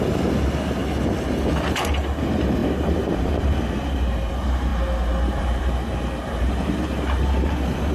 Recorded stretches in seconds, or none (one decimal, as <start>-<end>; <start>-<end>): 0.8-1.7; 4.7-5.4